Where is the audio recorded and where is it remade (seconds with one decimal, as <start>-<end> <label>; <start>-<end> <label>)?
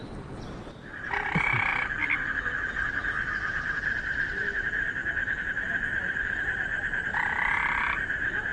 0.0-1.7 remade; 1.7-2.7 recorded; 2.7-8.5 remade